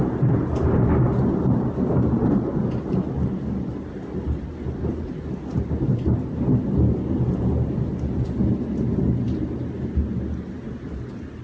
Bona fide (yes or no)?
yes